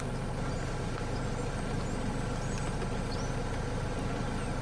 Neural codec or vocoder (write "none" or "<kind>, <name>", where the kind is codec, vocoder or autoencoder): none